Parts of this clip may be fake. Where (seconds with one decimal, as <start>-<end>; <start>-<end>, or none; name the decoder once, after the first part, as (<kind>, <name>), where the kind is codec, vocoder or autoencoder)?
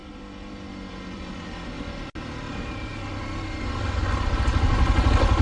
none